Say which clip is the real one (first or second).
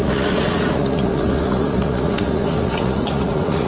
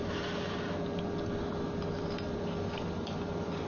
second